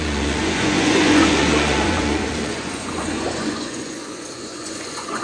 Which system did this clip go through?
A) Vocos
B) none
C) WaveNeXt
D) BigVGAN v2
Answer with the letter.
A